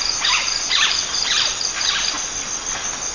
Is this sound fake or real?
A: real